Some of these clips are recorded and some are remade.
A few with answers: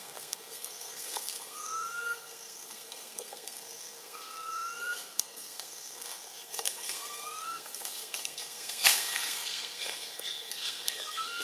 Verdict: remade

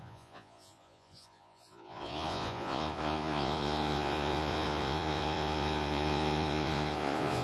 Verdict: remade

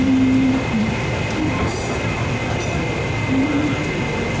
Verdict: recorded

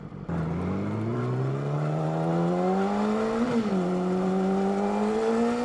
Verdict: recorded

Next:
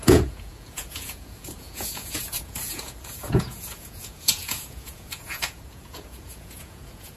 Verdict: remade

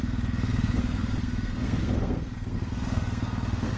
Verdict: remade